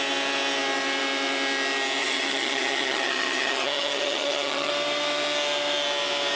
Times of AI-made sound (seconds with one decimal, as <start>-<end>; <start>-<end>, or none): 2.0-4.7

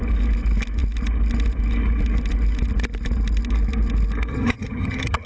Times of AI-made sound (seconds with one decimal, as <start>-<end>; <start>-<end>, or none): 4.3-5.3

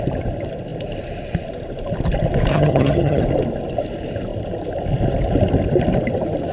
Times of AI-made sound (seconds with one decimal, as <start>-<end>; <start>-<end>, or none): 2.5-3.2